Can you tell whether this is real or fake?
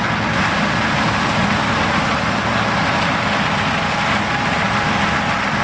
real